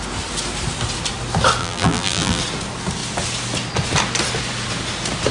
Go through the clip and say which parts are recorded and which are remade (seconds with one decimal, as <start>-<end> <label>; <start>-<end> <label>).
0.0-1.6 recorded; 1.6-2.4 remade; 2.4-5.3 recorded